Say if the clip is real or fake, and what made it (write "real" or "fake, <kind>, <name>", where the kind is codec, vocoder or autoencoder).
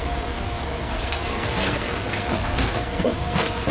fake, codec, SNAC